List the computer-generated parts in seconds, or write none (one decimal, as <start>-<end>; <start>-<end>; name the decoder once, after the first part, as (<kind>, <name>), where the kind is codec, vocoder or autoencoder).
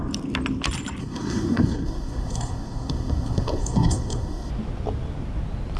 1.0-4.5 (codec, SNAC)